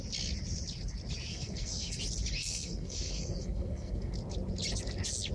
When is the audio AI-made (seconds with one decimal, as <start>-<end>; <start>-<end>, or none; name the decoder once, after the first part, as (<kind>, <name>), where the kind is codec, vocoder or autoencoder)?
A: 1.3-2.0 (codec, SNAC); 2.4-4.1